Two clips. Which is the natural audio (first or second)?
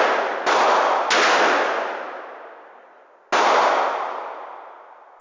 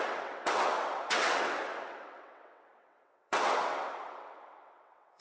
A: first